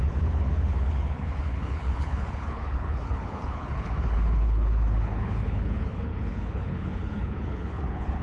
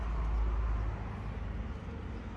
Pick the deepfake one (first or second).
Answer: first